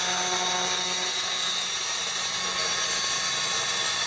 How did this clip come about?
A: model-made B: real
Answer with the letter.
B